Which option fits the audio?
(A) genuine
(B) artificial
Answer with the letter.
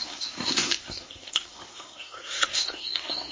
B